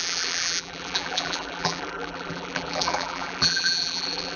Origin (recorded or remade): remade